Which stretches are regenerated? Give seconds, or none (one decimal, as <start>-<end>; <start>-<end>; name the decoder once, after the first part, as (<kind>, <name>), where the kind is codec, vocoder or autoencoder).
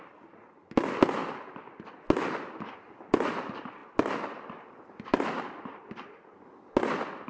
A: 1.2-2.0 (vocoder, BigVGAN v2); 3.8-5.8